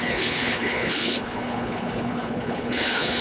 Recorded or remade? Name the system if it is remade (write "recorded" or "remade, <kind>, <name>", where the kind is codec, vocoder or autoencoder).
remade, codec, HILCodec